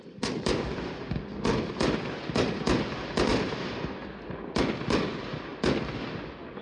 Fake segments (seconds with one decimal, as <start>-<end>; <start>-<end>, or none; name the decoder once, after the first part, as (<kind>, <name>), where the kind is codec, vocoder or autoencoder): none